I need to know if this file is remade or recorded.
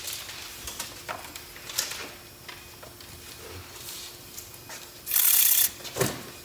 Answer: recorded